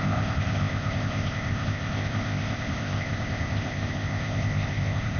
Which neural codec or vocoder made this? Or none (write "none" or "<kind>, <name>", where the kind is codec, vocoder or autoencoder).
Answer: codec, ZipCodec